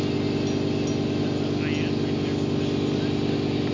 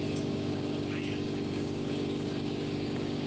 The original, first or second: first